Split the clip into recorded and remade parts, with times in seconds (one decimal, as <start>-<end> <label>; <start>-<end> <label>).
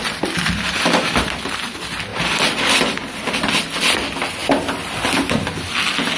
0.0-2.1 recorded; 2.1-2.6 remade; 2.6-6.2 recorded